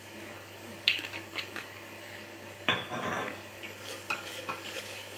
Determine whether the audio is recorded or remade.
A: remade